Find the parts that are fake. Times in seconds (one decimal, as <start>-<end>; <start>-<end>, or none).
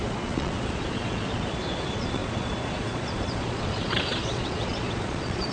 0.0-5.5